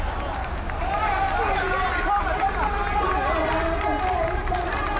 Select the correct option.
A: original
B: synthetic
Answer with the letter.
A